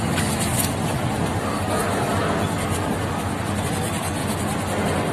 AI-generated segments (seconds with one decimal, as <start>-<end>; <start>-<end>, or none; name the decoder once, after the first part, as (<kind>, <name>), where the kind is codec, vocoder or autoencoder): 0.0-0.5 (vocoder, BigVGAN v2); 3.6-4.2